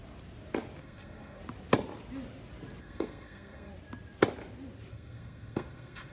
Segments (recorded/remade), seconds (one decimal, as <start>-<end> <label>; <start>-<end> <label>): 0.0-0.8 recorded; 0.8-1.4 remade; 1.4-2.8 recorded; 2.8-3.7 remade; 3.7-4.9 recorded; 4.9-6.1 remade